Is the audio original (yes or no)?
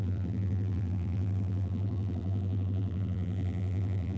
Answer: no